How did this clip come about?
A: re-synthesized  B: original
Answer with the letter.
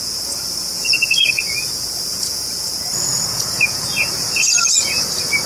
A